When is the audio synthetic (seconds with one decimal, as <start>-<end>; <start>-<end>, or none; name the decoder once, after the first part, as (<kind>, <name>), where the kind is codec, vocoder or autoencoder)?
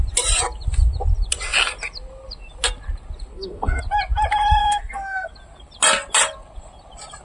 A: 3.3-3.8 (codec, SNAC); 4.6-5.3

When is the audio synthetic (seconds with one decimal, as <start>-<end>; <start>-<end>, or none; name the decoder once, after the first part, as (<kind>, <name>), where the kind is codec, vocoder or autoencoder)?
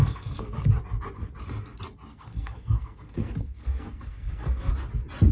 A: 0.0-0.6 (codec, SNAC); 2.1-4.7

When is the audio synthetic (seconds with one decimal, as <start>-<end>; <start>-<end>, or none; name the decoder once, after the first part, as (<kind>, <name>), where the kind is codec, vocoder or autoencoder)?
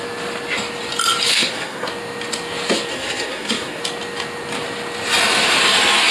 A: 1.3-1.9 (codec, SNAC); 2.9-3.8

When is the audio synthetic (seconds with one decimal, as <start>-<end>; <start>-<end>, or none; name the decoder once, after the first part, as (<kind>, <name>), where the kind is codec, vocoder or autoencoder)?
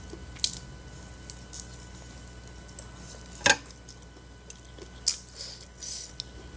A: none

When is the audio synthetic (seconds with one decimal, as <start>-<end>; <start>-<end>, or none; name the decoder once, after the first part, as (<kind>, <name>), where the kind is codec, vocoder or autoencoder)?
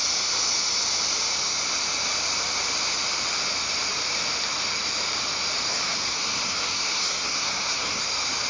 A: 5.7-8.0 (codec, SNAC)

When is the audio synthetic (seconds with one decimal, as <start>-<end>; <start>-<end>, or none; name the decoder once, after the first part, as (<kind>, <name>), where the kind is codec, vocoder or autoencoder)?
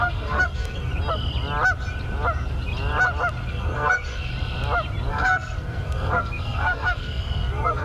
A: 0.0-0.9 (codec, SNAC); 3.5-4.3; 5.1-7.8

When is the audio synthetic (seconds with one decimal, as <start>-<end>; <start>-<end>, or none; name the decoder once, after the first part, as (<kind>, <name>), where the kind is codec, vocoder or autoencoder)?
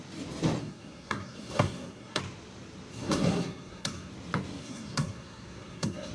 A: 0.6-2.2 (codec, SNAC); 2.9-4.1; 4.6-6.1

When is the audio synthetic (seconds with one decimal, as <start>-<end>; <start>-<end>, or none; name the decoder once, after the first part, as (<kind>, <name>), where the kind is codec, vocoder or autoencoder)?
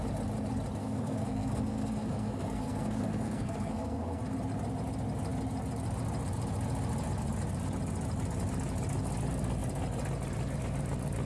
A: 0.8-4.2 (codec, SNAC)